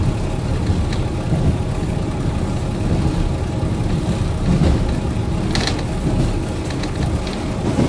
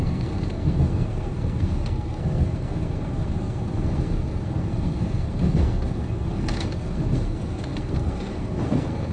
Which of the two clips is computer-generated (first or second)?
second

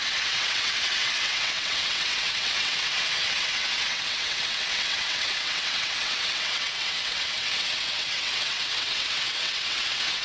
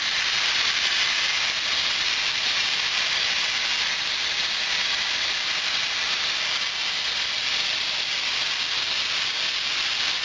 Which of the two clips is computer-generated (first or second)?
first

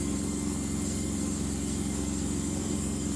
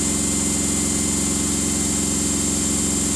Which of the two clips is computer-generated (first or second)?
first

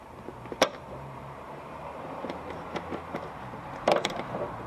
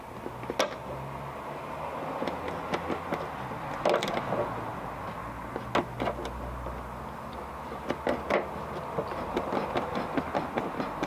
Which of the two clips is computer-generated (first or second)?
first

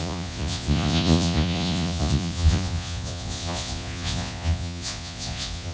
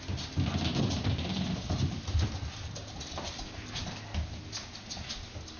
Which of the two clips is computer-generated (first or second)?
first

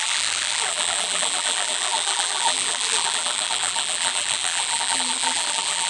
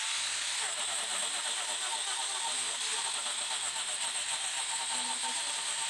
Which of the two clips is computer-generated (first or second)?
first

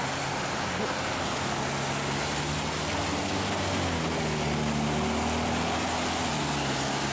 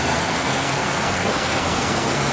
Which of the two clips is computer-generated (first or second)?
second